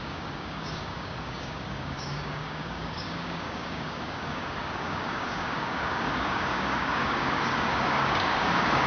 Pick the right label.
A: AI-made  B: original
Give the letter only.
A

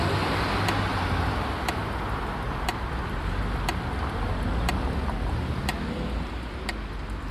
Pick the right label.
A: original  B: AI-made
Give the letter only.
A